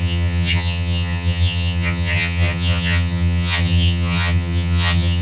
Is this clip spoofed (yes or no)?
yes